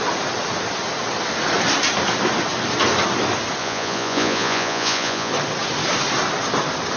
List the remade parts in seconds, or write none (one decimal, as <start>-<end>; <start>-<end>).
3.6-5.3